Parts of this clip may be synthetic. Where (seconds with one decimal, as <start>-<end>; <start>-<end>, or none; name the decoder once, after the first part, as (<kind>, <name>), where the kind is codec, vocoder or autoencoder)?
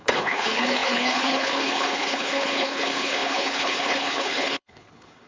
0.0-5.3 (codec, HILCodec)